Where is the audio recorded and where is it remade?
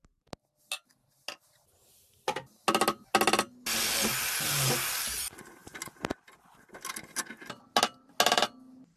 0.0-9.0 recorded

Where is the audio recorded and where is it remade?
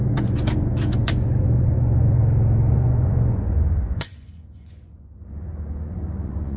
0.0-2.2 remade; 2.2-2.7 recorded; 2.7-6.6 remade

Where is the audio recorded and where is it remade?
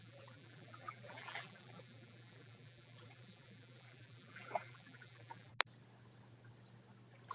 0.0-5.5 remade; 5.5-7.3 recorded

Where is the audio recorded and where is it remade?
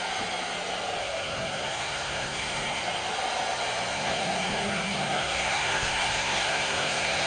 0.0-1.0 recorded; 1.0-2.8 remade; 2.8-3.9 recorded; 3.9-7.3 remade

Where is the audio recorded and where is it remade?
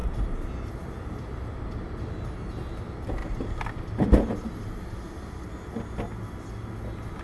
0.0-7.2 recorded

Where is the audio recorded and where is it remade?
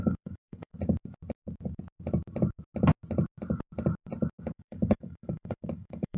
0.0-0.7 remade; 0.7-4.4 recorded; 4.4-6.2 remade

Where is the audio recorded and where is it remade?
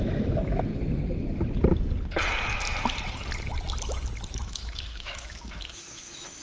0.0-0.7 remade; 0.7-4.4 recorded; 4.4-6.4 remade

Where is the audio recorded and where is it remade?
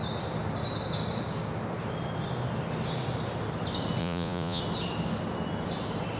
0.0-4.0 recorded; 4.0-4.6 remade; 4.6-6.2 recorded